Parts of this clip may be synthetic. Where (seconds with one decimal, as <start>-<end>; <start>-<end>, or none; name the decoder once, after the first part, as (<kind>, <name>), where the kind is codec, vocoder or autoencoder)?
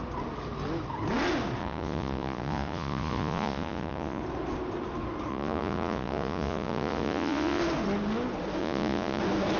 1.6-4.2 (vocoder, Vocos); 5.3-7.6; 8.6-9.2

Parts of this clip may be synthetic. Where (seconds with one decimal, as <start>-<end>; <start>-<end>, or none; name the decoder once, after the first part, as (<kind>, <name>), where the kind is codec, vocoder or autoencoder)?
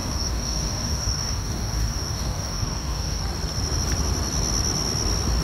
0.0-3.2 (codec, DAC)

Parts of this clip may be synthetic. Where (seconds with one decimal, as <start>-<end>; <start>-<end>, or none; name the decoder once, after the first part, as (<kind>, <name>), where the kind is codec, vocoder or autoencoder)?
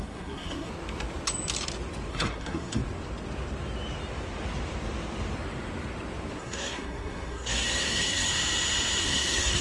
0.0-0.7 (codec, SNAC); 2.1-2.8; 6.4-8.3; 9.0-9.6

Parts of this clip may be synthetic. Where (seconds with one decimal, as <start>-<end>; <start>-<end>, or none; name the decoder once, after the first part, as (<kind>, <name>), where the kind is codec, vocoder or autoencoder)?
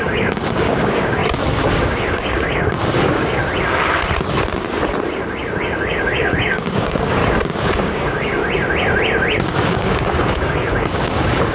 0.0-1.2 (codec, DAC); 1.7-3.4; 5.6-7.2; 7.8-8.4; 9.6-11.5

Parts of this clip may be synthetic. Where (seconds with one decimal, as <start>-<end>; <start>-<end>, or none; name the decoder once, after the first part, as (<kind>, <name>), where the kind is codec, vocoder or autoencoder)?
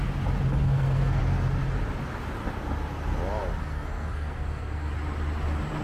0.6-1.2 (codec, SNAC); 3.6-4.9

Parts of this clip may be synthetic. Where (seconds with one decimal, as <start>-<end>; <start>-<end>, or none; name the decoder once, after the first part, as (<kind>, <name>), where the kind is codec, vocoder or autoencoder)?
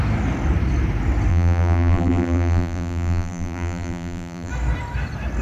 1.3-4.5 (vocoder, BigVGAN v2)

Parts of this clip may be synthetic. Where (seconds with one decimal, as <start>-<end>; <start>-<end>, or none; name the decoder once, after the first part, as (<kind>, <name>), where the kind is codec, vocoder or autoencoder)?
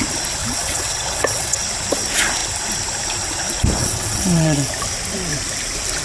0.4-1.6 (vocoder, WaveNeXt); 3.8-4.7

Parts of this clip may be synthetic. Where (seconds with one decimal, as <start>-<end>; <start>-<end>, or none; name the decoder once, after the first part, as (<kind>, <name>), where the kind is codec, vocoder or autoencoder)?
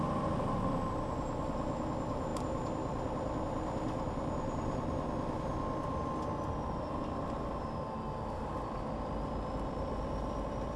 none